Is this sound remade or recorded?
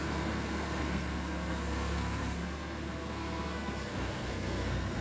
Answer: remade